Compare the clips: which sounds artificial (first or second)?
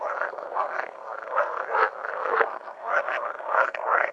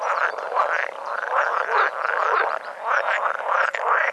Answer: first